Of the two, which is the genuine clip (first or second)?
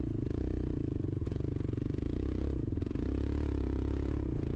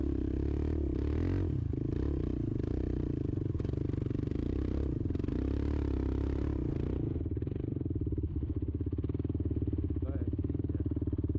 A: second